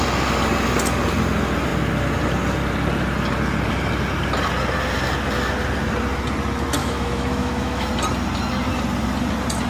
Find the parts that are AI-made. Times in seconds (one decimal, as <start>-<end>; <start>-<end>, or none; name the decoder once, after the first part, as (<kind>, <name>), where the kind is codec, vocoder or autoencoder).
6.8-7.9 (autoencoder, DAC-VAE)